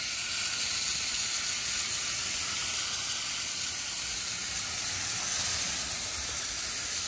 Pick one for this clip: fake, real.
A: real